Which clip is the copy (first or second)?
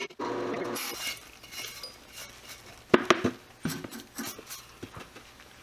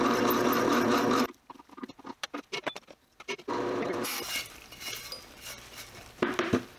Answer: second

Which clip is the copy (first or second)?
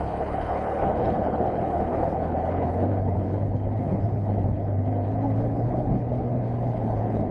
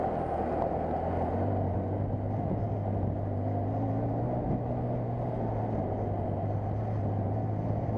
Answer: first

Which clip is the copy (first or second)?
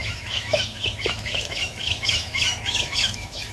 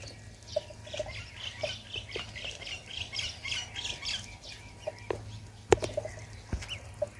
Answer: first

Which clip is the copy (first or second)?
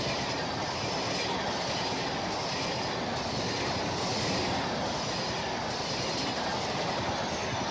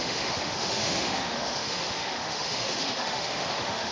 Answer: second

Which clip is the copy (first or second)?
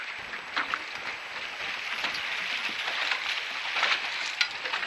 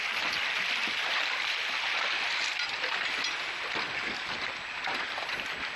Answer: second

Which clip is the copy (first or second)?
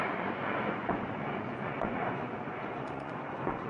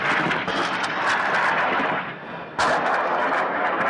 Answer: first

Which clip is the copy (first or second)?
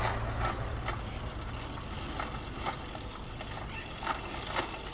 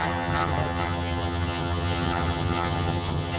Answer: second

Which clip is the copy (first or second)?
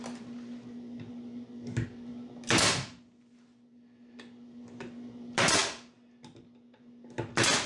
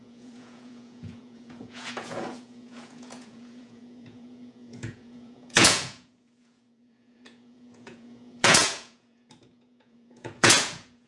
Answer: second